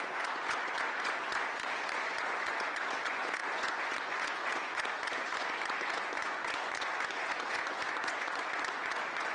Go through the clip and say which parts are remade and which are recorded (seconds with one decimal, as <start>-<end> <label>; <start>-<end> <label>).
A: 0.0-9.3 remade